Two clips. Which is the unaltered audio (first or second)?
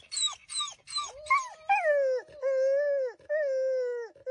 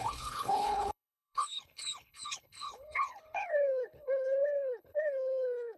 first